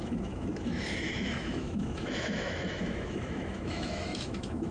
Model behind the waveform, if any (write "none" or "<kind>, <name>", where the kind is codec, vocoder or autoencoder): autoencoder, DAC-VAE